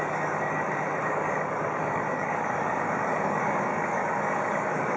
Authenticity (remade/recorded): remade